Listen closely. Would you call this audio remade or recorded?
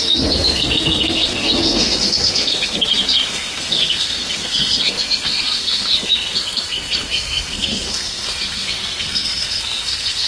remade